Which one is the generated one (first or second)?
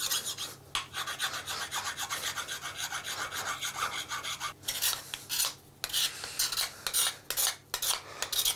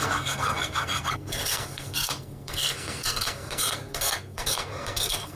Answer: second